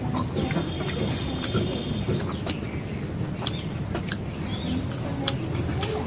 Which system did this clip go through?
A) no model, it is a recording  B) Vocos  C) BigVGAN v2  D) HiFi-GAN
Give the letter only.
A